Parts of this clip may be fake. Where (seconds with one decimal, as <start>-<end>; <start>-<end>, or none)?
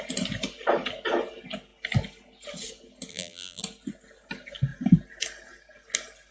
3.1-3.6